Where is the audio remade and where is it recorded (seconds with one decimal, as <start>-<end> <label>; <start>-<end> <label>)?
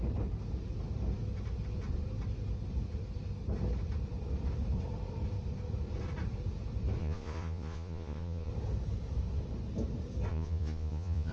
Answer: 0.0-7.0 recorded; 7.0-8.5 remade; 8.5-10.3 recorded; 10.3-11.3 remade